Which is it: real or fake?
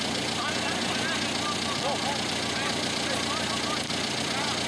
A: real